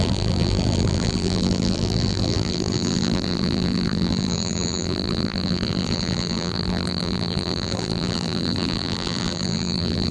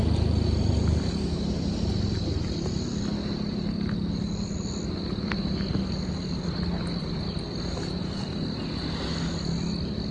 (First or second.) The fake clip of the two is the first